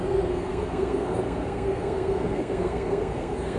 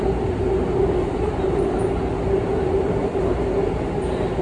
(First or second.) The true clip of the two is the second